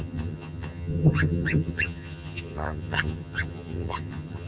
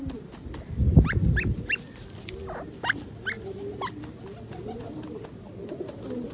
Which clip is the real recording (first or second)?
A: second